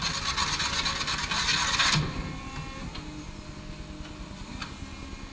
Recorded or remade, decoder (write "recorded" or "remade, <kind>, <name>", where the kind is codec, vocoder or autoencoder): recorded